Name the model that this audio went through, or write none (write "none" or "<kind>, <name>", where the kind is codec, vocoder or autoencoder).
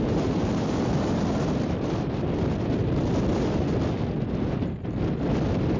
none